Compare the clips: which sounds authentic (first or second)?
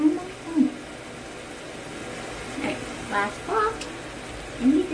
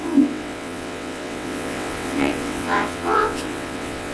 first